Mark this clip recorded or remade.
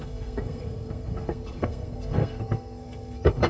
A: remade